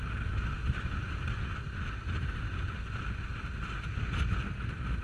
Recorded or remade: recorded